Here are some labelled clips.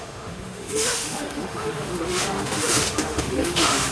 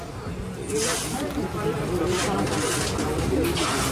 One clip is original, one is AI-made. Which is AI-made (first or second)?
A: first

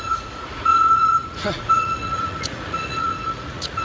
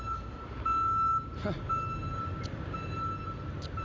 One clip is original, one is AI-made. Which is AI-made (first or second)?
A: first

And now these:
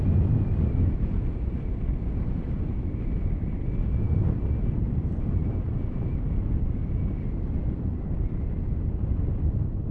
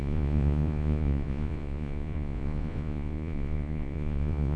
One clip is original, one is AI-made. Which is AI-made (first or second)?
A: second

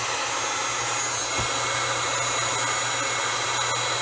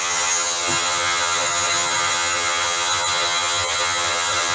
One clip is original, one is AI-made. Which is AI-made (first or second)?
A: second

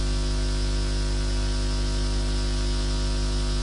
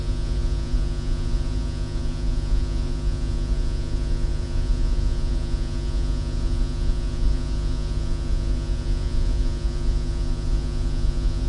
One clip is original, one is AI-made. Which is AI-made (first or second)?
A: second